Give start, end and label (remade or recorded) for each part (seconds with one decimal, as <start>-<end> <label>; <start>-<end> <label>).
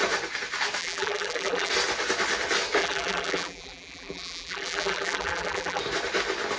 0.0-0.8 recorded; 0.8-1.7 remade; 1.7-2.8 recorded; 2.8-5.8 remade; 5.8-6.6 recorded